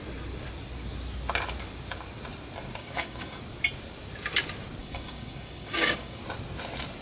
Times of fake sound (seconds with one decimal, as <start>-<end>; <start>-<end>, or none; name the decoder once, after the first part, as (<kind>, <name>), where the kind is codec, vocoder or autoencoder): 2.8-3.4 (codec, DAC); 4.8-6.2